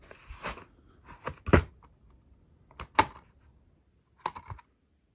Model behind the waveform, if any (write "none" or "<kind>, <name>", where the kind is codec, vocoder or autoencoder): none